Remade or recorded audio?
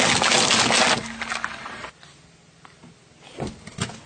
recorded